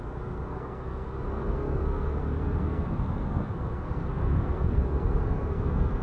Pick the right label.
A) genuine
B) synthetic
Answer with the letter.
B